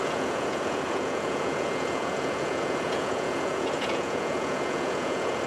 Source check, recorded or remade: remade